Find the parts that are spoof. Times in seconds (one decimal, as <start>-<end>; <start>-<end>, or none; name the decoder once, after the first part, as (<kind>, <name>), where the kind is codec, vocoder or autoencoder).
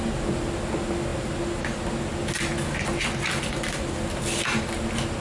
none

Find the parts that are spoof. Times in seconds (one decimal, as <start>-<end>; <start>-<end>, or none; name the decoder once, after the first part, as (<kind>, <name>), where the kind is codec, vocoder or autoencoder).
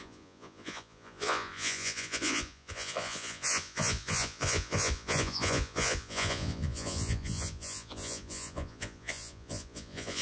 0.0-10.2 (vocoder, Vocos)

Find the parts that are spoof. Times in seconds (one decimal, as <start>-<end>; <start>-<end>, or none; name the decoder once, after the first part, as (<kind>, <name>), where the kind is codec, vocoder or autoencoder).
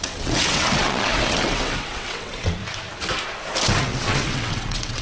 0.0-2.6 (vocoder, WaveNeXt); 3.8-5.0